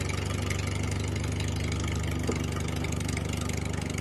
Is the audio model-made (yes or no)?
no